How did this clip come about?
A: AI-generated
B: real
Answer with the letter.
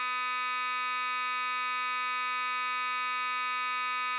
B